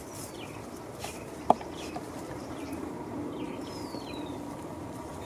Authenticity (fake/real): real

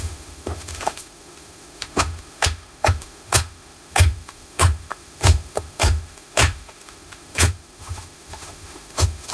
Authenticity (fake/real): fake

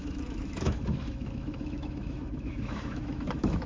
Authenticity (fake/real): fake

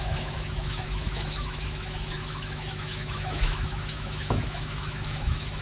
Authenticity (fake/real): fake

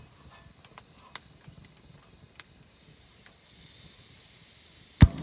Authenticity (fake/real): real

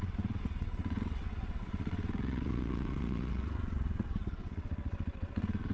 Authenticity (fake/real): fake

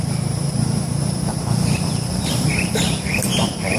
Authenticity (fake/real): fake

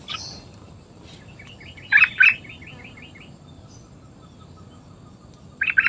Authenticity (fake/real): real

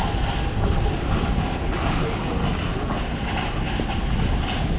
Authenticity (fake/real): real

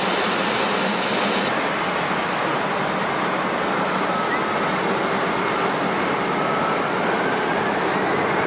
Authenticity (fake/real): real